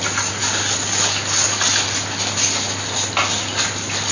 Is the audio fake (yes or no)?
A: no